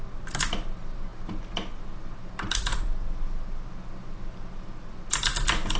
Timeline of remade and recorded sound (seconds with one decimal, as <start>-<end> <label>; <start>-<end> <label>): 0.0-5.8 recorded